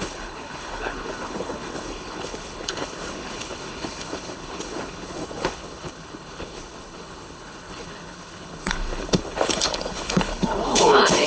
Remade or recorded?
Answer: remade